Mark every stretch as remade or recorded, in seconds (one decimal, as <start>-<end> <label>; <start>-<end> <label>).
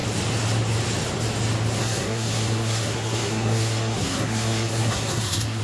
0.0-1.8 recorded; 1.8-5.6 remade